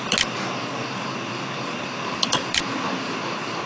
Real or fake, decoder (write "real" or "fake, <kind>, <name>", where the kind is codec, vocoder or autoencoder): real